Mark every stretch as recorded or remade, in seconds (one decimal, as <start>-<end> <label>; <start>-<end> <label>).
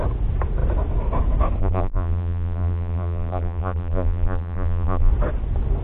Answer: 0.0-1.6 recorded; 1.6-5.1 remade; 5.1-5.8 recorded